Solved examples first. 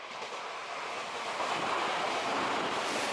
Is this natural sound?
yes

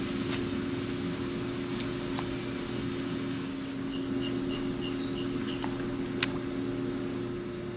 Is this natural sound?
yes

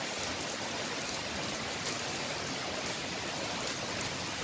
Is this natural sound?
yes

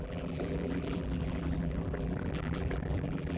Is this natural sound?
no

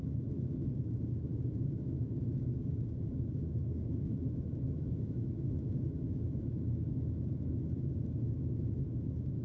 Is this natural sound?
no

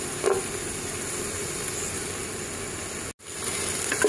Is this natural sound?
yes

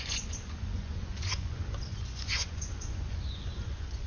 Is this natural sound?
no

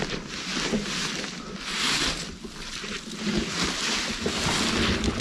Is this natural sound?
yes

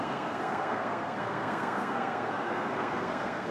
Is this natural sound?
no